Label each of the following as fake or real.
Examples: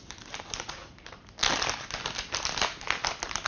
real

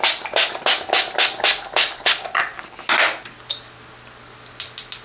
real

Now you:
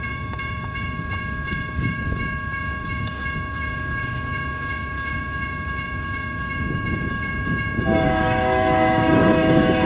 fake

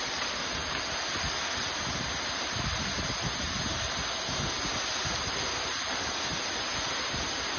real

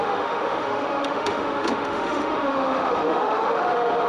fake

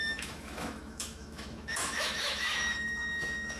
fake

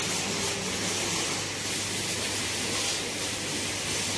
real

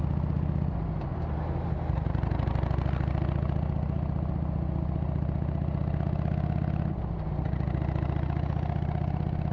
real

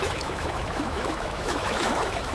fake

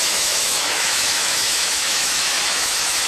fake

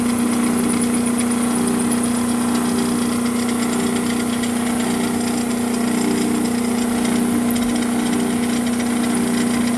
real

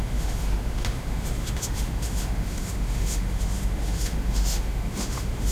fake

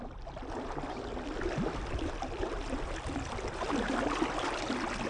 real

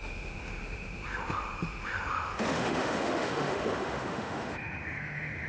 fake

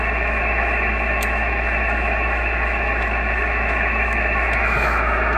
fake